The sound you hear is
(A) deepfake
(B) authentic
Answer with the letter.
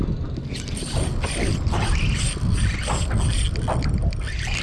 B